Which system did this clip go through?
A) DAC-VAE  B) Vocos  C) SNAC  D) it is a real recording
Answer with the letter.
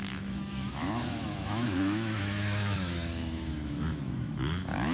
A